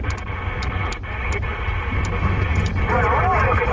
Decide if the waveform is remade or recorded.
recorded